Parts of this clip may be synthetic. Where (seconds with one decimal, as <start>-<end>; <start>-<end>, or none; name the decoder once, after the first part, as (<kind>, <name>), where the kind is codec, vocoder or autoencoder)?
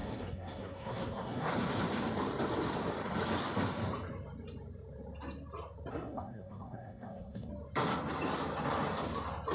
0.0-1.5 (codec, SNAC); 5.9-7.5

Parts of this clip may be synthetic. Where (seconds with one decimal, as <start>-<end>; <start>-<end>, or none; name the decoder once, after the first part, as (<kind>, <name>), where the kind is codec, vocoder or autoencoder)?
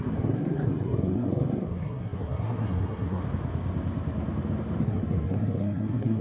0.0-3.2 (codec, SNAC); 4.8-6.2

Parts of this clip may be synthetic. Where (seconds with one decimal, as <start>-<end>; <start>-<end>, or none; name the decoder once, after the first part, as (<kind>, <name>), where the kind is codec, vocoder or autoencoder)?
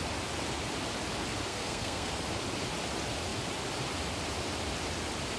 1.5-2.1 (codec, SNAC)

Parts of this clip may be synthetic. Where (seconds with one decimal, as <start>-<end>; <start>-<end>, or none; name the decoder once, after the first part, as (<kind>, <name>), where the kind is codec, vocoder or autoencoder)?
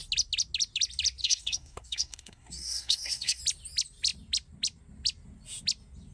1.2-3.4 (codec, SNAC)